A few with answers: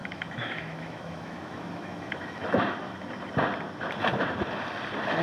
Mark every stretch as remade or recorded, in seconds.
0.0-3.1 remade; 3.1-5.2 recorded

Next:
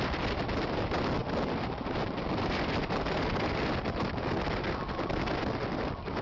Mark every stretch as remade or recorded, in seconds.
0.0-6.2 recorded